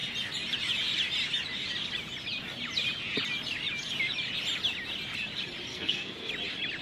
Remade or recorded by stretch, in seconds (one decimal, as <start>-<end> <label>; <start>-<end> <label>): 0.0-5.7 recorded; 5.7-6.3 remade; 6.3-6.8 recorded